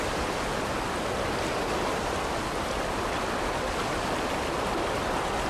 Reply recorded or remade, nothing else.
recorded